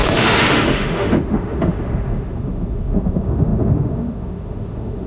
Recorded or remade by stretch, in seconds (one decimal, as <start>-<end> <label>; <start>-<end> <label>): 0.0-5.1 remade